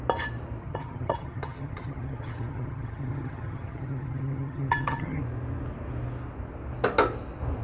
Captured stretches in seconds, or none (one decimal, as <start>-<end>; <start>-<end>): 0.0-0.6; 5.2-7.6